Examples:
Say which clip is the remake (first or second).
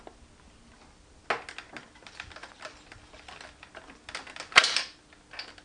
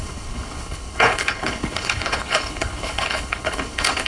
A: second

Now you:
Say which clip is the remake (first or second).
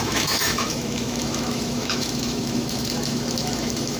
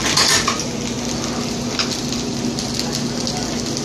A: first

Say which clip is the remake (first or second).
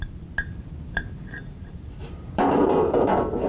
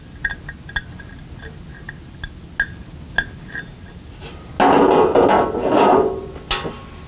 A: first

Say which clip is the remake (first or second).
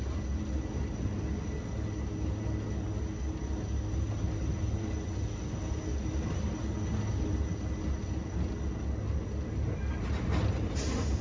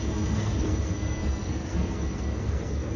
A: second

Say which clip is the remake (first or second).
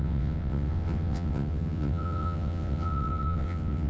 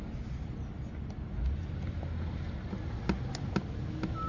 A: first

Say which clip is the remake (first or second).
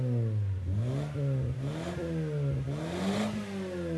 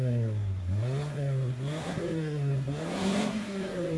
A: second